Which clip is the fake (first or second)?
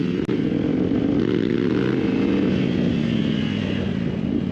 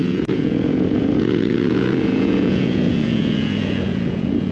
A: second